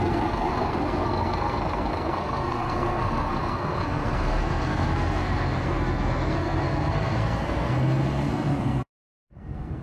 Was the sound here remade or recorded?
remade